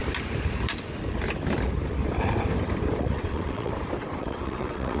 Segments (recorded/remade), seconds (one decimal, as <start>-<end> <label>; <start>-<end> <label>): 0.0-3.0 recorded; 3.0-3.7 remade; 3.7-4.2 recorded; 4.2-5.0 remade